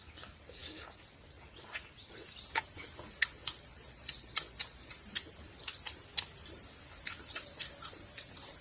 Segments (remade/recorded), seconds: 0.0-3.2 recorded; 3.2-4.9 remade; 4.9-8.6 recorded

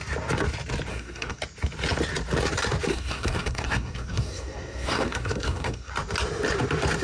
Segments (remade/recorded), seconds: 0.0-0.9 recorded; 0.9-1.4 remade; 1.4-2.9 recorded; 2.9-5.9 remade; 5.9-7.0 recorded

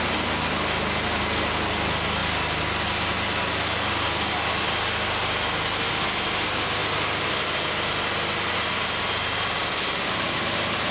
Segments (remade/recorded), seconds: 0.0-10.9 recorded

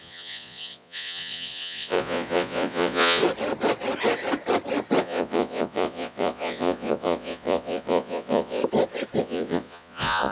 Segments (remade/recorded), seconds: 0.0-3.2 remade; 3.2-5.0 recorded; 5.0-8.6 remade; 8.6-9.2 recorded; 9.2-10.3 remade

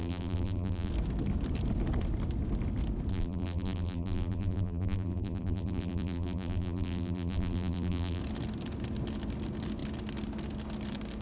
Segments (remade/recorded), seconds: 0.0-0.9 remade; 0.9-3.1 recorded; 3.1-8.2 remade; 8.2-11.2 recorded

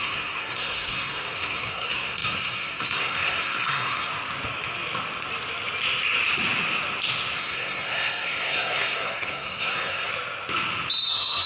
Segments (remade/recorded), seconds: 0.0-4.1 remade; 4.1-7.4 recorded; 7.4-10.1 remade; 10.1-11.1 recorded; 11.1-11.5 remade

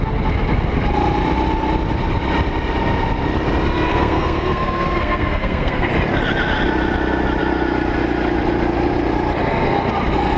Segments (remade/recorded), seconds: 0.0-3.9 recorded; 3.9-5.9 remade; 5.9-10.4 recorded

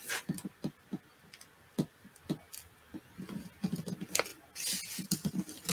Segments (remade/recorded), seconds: 0.0-5.7 recorded